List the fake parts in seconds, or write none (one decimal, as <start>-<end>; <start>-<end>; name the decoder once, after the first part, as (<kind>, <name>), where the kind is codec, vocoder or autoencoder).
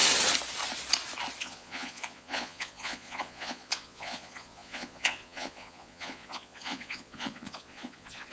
1.4-8.3 (vocoder, Vocos)